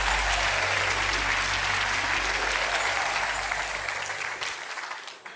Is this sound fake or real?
real